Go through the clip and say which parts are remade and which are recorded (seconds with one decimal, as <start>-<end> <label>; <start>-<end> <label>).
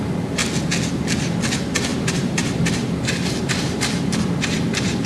0.0-1.9 recorded; 1.9-5.1 remade